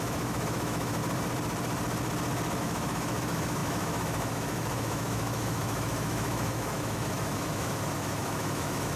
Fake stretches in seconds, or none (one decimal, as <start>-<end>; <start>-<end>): 0.0-1.0; 2.6-9.0